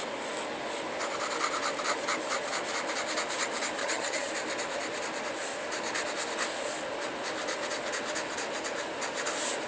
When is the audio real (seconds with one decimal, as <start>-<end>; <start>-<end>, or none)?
0.0-3.8; 4.3-9.7